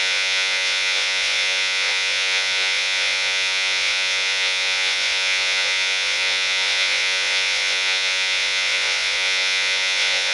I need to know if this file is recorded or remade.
remade